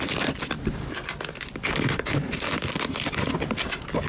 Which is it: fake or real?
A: real